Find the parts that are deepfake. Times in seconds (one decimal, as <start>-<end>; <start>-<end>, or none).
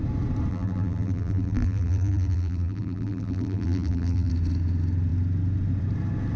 0.5-4.3